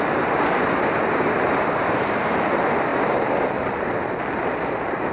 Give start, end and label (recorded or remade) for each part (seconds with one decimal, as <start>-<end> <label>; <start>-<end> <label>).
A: 0.0-2.9 recorded; 2.9-3.5 remade; 3.5-5.1 recorded